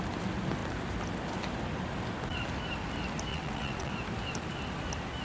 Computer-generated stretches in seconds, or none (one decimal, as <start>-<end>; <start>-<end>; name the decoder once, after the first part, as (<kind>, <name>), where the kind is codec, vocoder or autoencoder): 3.3-3.9 (vocoder, WaveNeXt)